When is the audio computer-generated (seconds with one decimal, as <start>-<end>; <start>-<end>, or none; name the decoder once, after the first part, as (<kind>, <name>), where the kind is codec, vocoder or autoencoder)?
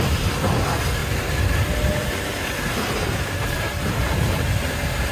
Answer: none